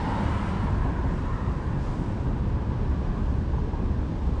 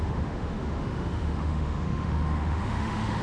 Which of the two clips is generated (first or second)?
second